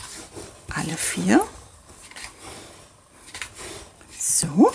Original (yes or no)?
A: no